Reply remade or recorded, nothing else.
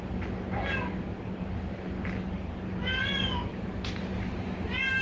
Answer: recorded